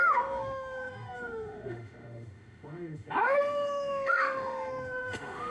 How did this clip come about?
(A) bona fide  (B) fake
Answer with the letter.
B